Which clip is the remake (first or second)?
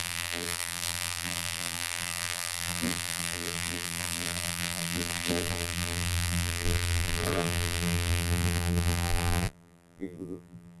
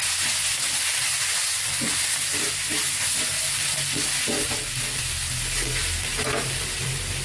first